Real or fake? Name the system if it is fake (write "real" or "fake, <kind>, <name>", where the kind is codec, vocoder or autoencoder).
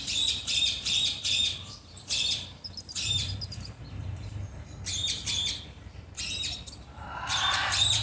fake, vocoder, BigVGAN v2